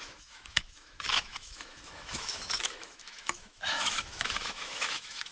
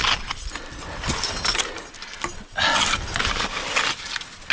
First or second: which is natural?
second